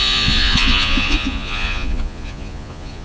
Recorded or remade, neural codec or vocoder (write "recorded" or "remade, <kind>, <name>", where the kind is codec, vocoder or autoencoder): remade, vocoder, Vocos